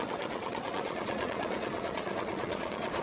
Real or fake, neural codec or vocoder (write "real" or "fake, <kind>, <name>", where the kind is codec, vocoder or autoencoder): fake, vocoder, Vocos